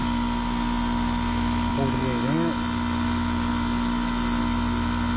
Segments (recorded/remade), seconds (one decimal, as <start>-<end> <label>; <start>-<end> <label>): 0.0-5.2 recorded